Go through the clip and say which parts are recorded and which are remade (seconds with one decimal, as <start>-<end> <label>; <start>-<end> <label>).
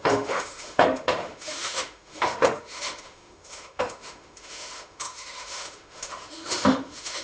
0.0-7.2 remade